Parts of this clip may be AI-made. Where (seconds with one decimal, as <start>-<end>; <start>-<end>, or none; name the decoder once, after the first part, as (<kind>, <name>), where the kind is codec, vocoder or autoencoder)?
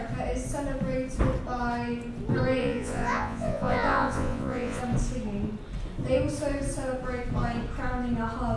2.6-4.8 (vocoder, Vocos)